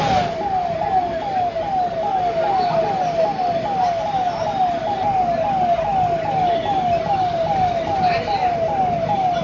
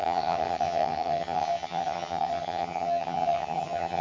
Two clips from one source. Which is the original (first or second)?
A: first